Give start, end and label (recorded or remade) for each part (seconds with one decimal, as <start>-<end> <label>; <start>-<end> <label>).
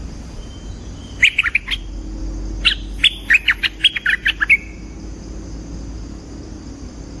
0.0-7.2 recorded